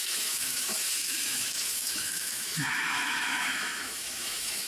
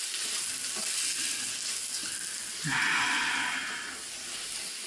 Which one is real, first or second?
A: second